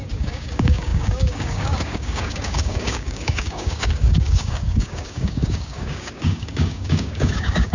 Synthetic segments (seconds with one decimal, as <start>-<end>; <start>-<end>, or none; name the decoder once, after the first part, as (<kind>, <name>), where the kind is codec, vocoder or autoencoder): 0.0-7.7 (codec, DAC)